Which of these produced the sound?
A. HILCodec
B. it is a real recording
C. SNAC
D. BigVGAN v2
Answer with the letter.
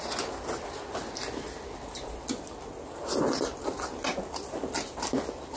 B